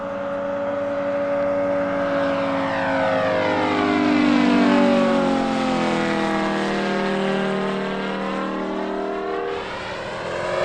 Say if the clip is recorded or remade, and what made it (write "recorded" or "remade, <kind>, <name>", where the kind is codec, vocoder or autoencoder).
recorded